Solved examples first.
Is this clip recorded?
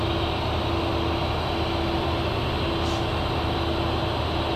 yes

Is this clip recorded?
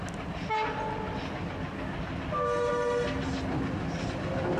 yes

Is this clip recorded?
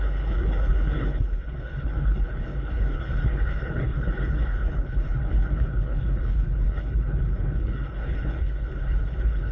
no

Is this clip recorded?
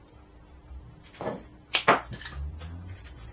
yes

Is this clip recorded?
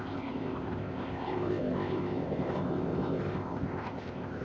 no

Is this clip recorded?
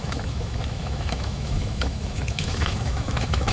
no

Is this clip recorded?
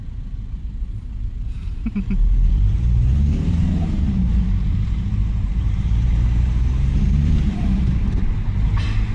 no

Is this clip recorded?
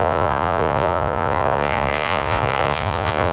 no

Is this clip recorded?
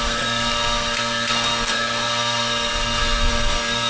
no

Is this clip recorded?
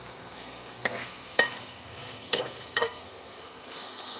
no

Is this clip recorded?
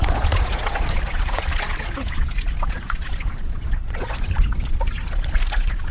no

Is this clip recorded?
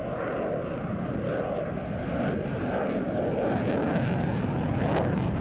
yes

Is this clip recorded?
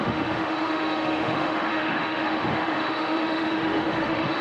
no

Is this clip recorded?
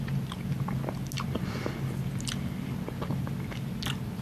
yes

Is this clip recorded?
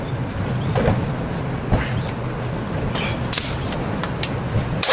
yes